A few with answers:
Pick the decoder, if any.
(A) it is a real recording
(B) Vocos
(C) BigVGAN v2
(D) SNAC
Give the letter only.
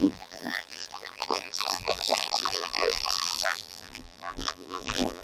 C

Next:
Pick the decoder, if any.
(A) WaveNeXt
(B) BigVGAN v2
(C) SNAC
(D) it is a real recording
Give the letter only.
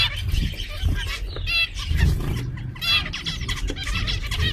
D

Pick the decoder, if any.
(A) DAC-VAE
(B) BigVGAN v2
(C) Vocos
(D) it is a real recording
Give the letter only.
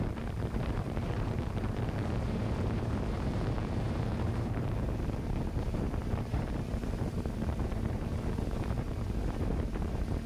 B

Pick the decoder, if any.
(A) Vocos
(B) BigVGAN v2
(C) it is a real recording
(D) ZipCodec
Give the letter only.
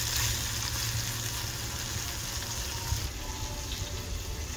C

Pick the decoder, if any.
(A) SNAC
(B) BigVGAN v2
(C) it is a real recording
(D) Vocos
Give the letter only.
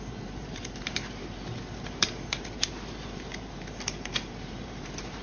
B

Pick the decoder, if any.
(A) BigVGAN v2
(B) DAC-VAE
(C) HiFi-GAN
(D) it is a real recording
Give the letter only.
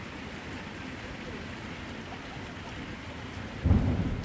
A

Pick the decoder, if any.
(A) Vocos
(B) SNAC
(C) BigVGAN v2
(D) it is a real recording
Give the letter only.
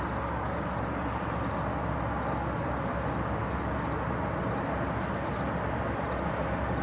D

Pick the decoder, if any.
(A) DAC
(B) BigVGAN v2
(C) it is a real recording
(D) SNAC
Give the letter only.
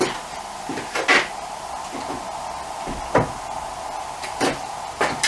C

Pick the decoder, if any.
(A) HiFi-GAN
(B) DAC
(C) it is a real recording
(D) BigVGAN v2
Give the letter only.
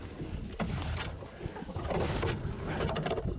C